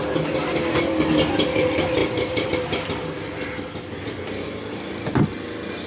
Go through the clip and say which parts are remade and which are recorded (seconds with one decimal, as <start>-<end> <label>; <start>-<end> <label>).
0.0-5.9 recorded